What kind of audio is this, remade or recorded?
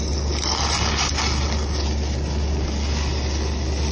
recorded